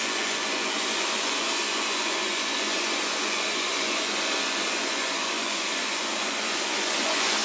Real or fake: fake